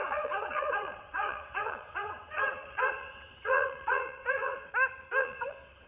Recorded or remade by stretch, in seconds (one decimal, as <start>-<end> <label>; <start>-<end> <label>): 0.0-4.7 remade; 4.7-5.2 recorded; 5.2-5.9 remade